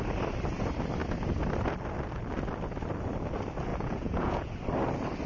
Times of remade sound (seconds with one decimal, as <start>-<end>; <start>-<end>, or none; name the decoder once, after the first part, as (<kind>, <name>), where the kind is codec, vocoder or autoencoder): 3.7-4.5 (vocoder, Vocos)